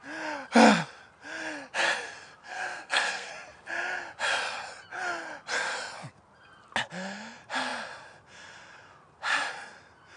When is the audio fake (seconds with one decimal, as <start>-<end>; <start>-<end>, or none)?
2.4-3.3